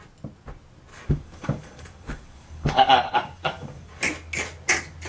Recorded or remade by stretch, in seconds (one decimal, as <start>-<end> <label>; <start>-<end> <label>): 0.0-0.9 recorded; 0.9-4.0 remade; 4.0-5.1 recorded